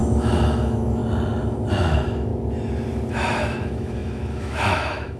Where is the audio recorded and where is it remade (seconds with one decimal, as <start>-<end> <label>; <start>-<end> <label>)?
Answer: 0.0-1.0 remade; 1.0-1.7 recorded; 1.7-2.3 remade; 2.3-3.1 recorded; 3.1-5.2 remade